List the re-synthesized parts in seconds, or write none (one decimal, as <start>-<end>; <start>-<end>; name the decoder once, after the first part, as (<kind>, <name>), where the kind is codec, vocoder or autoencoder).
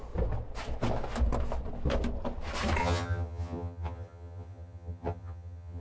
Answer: 2.8-5.8 (vocoder, HiFi-GAN)